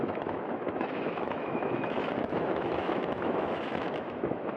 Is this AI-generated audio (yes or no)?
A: yes